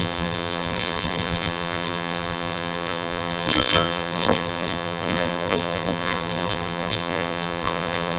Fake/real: fake